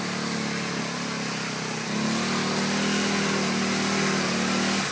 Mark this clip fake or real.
real